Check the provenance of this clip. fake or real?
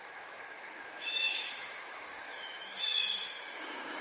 fake